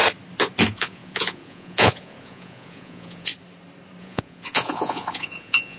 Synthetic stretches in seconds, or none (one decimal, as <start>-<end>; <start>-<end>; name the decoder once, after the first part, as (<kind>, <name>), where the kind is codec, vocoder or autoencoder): 0.6-3.3 (vocoder, Vocos); 4.0-5.8